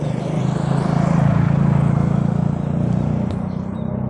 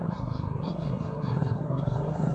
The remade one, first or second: second